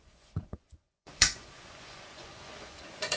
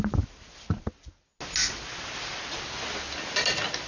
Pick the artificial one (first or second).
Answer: first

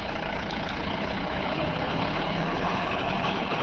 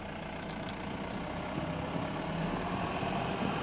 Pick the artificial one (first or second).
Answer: first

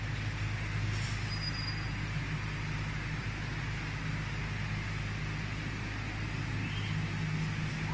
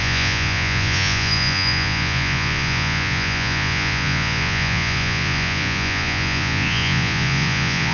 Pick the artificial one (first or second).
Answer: second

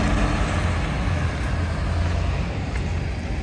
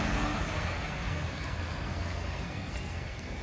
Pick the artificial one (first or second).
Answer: second